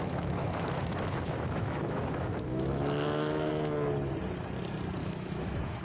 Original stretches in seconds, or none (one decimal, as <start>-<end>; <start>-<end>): 3.5-5.0